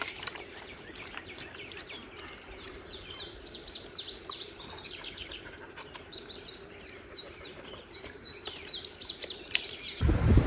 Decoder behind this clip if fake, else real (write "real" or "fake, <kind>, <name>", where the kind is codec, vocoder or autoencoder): fake, vocoder, BigVGAN v2